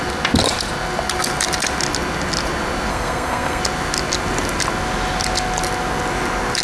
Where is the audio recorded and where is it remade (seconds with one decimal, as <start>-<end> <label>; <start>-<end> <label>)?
0.0-2.9 recorded; 2.9-3.6 remade; 3.6-6.6 recorded